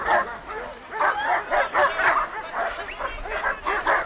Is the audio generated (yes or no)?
no